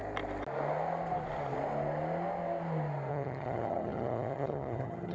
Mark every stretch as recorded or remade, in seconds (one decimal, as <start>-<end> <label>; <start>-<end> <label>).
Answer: 0.0-3.1 recorded; 3.1-5.1 remade